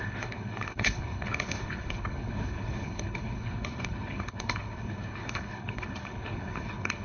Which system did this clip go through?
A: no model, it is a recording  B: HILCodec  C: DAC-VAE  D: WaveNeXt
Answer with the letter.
B